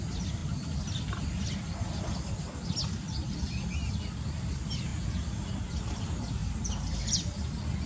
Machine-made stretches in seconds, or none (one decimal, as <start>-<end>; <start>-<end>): 0.0-0.4; 4.0-4.9; 6.0-7.9

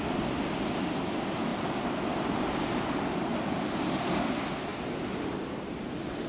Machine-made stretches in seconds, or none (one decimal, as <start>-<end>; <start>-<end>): none

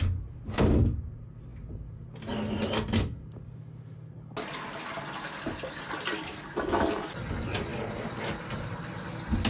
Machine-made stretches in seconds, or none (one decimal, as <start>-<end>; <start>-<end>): none

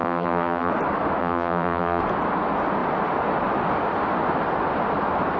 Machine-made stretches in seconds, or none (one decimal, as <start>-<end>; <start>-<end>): 0.0-0.7; 1.2-2.0